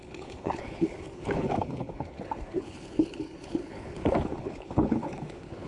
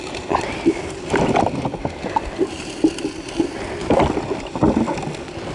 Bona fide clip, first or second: second